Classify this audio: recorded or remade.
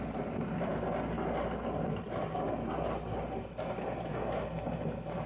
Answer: recorded